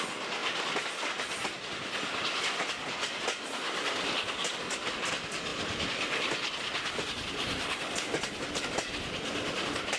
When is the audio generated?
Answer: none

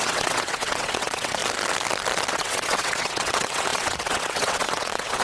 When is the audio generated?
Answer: 0.0-1.4 (vocoder, WaveNeXt); 2.3-5.2

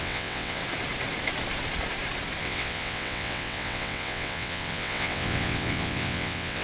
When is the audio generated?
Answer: 0.0-0.6 (vocoder, WaveNeXt); 2.4-6.6